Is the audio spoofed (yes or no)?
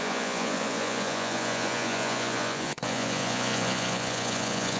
yes